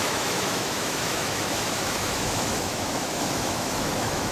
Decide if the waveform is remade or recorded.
remade